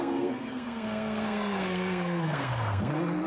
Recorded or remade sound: remade